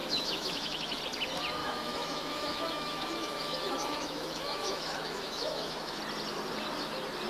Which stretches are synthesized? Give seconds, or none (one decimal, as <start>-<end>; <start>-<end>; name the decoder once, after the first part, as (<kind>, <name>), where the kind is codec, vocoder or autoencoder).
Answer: 0.0-1.0 (autoencoder, DAC-VAE); 1.6-6.0